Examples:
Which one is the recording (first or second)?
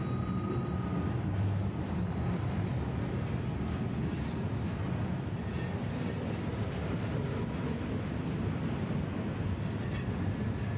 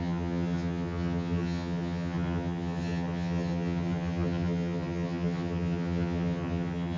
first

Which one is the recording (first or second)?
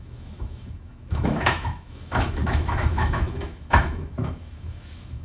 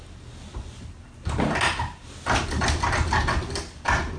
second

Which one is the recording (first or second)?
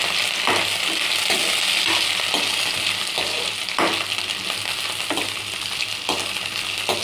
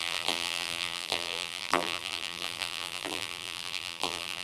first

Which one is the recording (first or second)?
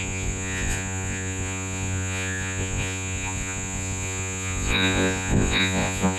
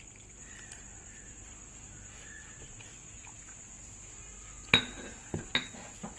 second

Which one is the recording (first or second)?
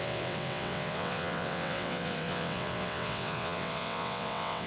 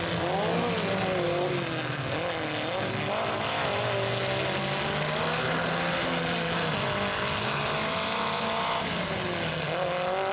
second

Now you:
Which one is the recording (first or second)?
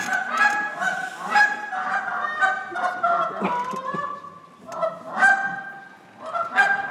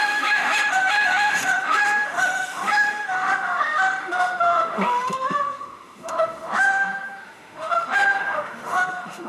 first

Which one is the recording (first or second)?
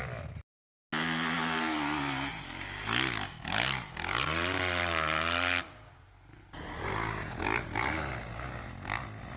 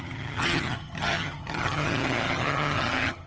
first